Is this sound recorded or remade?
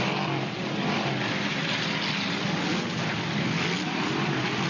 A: recorded